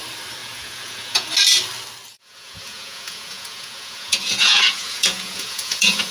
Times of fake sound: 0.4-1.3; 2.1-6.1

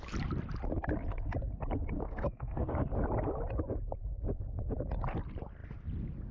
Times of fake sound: 2.0-2.7

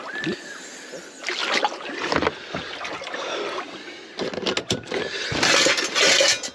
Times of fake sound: none

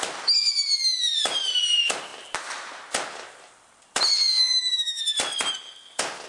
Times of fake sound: 4.4-5.0

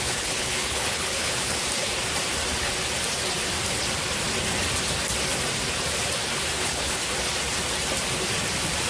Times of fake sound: 0.0-1.6; 6.6-7.0

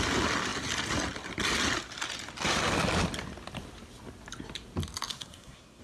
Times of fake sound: 5.1-5.8

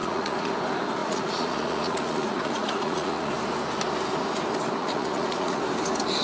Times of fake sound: 0.0-0.5; 1.0-3.3; 4.8-5.6

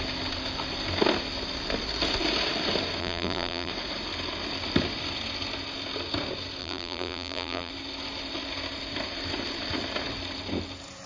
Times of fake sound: 3.0-3.7; 6.6-7.7